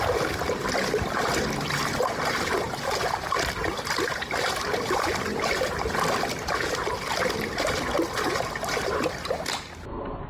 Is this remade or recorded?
recorded